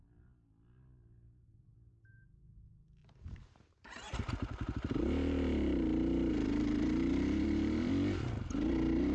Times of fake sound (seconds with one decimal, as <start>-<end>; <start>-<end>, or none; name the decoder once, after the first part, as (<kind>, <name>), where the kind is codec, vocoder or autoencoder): 3.0-7.9 (vocoder, BigVGAN v2)